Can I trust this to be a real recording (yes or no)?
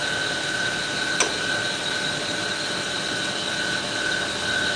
yes